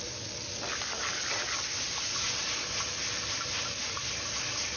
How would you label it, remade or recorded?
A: recorded